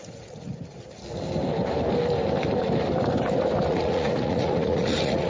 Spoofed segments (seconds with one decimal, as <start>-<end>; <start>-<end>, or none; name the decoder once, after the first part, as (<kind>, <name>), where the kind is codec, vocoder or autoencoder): 0.0-0.5 (vocoder, Vocos); 3.7-5.3